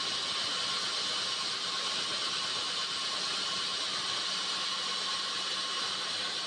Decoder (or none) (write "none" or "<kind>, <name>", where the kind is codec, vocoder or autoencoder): none